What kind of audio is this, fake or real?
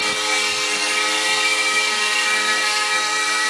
fake